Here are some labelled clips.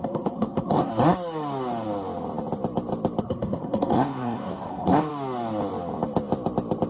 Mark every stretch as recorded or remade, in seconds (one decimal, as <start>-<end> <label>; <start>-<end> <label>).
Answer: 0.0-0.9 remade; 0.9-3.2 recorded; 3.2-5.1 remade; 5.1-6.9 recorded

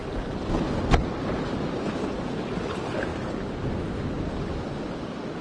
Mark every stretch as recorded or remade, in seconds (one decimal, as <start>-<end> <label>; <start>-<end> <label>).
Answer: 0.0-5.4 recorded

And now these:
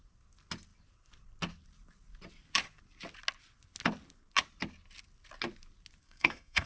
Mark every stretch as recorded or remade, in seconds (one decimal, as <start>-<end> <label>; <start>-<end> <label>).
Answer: 0.0-6.0 recorded; 6.0-6.7 remade